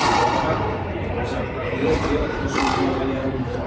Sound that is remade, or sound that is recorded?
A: remade